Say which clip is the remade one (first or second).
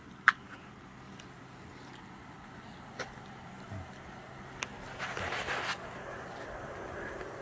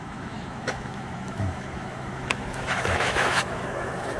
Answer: second